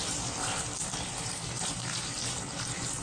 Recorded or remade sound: remade